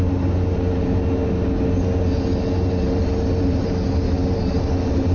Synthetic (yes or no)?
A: no